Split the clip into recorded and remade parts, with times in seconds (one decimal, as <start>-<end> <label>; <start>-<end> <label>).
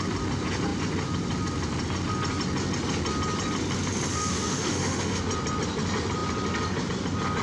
0.0-4.1 recorded; 4.1-5.2 remade; 5.2-7.4 recorded